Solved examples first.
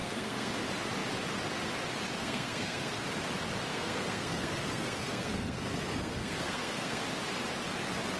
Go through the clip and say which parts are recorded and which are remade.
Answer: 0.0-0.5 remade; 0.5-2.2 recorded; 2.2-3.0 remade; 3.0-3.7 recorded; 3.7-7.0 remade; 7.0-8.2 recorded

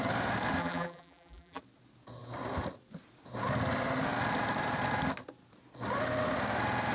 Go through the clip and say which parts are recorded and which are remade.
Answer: 0.0-0.6 recorded; 0.6-1.6 remade; 1.6-6.9 recorded

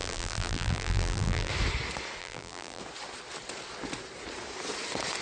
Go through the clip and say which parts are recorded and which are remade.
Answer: 0.0-1.5 remade; 1.5-2.2 recorded; 2.2-2.8 remade; 2.8-5.2 recorded

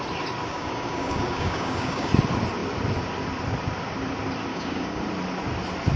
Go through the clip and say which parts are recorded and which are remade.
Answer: 0.0-0.5 recorded; 0.5-2.1 remade; 2.1-4.5 recorded; 4.5-5.0 remade; 5.0-6.0 recorded

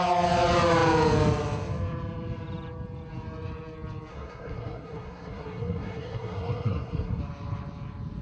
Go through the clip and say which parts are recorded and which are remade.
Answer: 0.0-4.1 recorded; 4.1-7.2 remade; 7.2-8.2 recorded